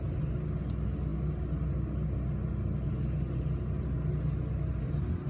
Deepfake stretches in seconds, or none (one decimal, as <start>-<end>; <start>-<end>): none

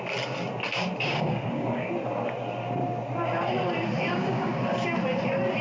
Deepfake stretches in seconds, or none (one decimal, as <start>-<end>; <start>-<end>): 1.1-1.9; 4.1-4.6

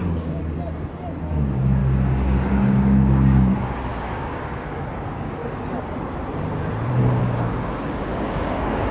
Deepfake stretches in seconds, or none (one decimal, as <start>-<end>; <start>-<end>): 0.0-0.4; 1.2-1.8; 2.5-5.4; 7.2-8.9

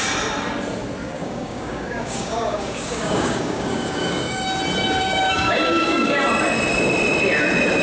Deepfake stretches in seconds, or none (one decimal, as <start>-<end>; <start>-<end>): 1.0-4.6; 5.0-6.2